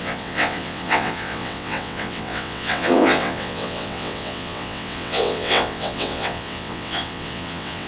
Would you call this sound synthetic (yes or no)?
yes